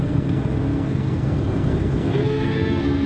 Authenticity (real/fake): fake